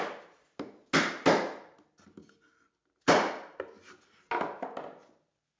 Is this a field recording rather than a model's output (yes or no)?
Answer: yes